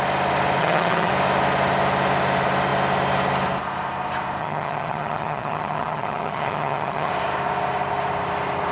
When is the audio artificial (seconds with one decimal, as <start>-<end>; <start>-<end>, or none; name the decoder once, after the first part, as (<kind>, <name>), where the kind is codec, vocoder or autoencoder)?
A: 0.6-1.1 (vocoder, HiFi-GAN); 4.4-7.1